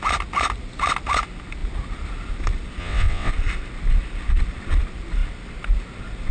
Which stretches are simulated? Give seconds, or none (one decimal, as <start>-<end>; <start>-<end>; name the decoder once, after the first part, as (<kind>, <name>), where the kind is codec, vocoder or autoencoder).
2.8-3.3 (vocoder, WaveNeXt)